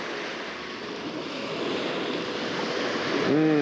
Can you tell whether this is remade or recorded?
recorded